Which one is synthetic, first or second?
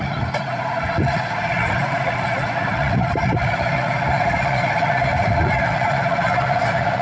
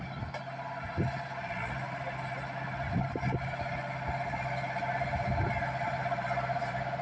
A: first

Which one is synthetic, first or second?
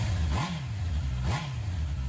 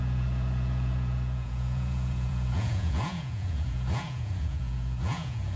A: second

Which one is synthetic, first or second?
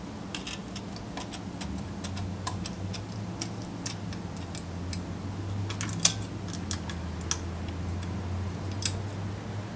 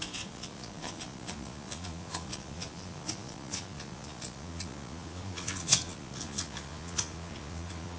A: second